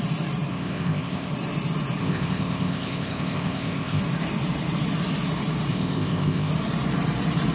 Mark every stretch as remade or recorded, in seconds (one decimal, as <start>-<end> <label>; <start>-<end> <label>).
0.0-0.5 recorded; 0.5-1.3 remade; 1.3-2.0 recorded; 2.0-4.0 remade; 4.0-5.7 recorded; 5.7-6.5 remade; 6.5-7.5 recorded